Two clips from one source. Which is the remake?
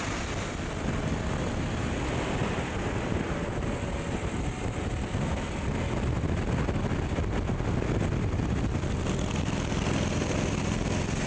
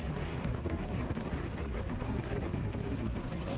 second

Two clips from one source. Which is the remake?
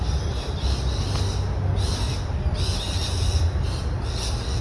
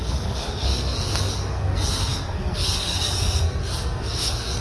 second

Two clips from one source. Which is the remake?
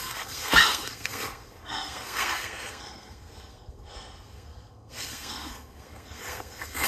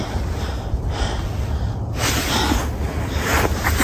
first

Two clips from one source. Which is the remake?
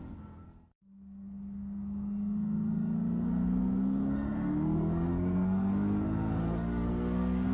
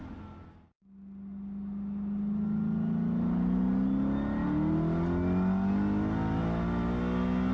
first